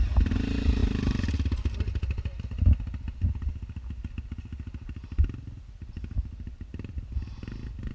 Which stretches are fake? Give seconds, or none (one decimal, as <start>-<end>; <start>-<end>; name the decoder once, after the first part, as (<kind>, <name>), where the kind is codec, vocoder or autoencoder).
none